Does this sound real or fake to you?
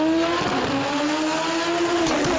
real